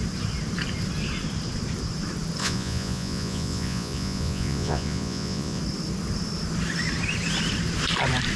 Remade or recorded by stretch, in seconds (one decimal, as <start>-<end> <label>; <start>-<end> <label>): 0.0-2.4 recorded; 2.4-5.6 remade; 5.6-8.4 recorded